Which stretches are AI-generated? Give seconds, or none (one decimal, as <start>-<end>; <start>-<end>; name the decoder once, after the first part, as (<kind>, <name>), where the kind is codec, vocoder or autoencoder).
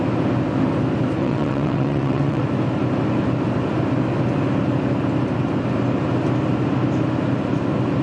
1.2-2.4 (vocoder, WaveNeXt)